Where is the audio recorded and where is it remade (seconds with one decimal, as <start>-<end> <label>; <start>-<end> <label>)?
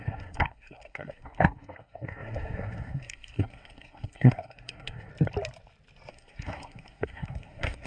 0.0-5.1 remade; 5.1-6.1 recorded; 6.1-7.9 remade